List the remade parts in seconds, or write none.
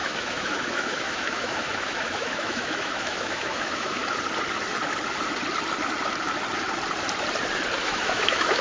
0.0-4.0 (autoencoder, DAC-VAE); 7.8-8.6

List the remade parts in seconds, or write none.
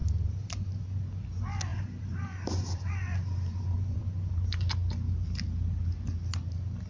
0.0-0.8 (vocoder, BigVGAN v2); 1.7-4.3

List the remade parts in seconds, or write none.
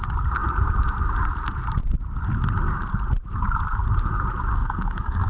4.6-5.3 (codec, SNAC)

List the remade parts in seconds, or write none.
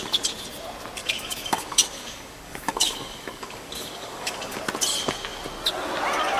1.0-4.6 (codec, DAC)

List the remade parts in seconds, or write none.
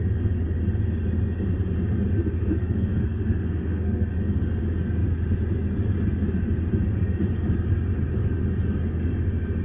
2.6-4.1 (codec, SNAC)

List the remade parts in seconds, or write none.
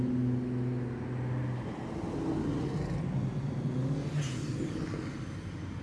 none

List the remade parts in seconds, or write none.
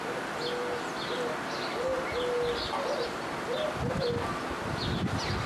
none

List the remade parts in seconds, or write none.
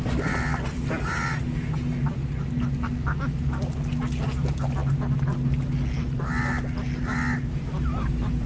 none